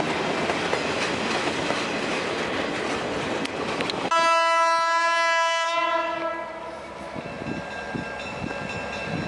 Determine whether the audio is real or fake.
real